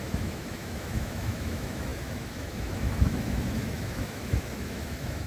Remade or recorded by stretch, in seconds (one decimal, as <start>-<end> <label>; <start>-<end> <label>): 0.0-5.3 remade